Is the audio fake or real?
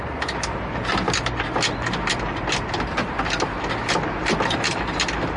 real